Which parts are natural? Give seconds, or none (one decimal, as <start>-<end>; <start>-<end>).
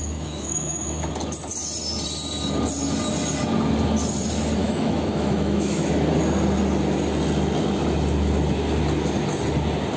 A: 1.1-4.6; 5.9-10.0